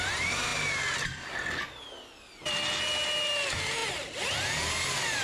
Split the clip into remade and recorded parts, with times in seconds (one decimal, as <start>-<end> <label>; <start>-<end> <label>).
0.0-5.2 recorded

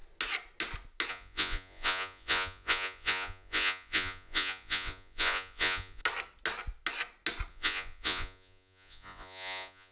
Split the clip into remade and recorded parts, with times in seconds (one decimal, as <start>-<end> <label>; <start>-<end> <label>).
0.0-1.1 recorded; 1.1-6.0 remade; 6.0-7.5 recorded; 7.5-9.9 remade

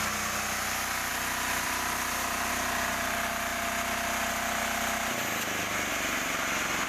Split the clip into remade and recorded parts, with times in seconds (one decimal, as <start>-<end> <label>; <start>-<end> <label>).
0.0-1.1 recorded; 1.1-2.5 remade; 2.5-6.9 recorded

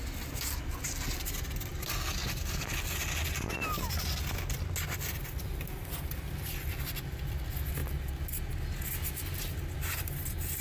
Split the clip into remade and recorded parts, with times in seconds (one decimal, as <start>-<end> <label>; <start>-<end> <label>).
0.0-10.6 recorded

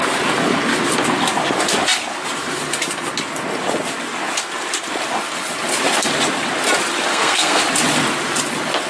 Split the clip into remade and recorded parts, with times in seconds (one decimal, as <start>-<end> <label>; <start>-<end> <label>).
0.0-7.1 recorded; 7.1-7.6 remade; 7.6-8.9 recorded

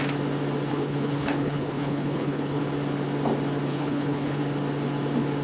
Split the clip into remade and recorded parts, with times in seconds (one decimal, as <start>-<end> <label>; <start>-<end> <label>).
0.0-0.7 recorded; 0.7-2.6 remade; 2.6-3.7 recorded; 3.7-4.4 remade; 4.4-5.4 recorded